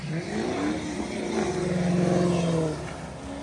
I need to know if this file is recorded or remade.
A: recorded